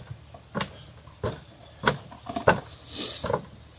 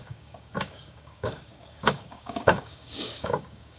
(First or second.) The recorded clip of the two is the first